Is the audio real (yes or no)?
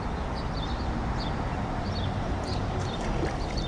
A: yes